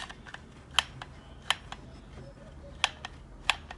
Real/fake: real